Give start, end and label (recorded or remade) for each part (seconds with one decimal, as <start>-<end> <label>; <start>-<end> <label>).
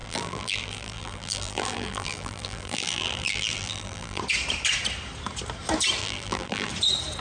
0.0-4.2 remade; 4.2-6.0 recorded; 6.0-6.7 remade; 6.7-7.2 recorded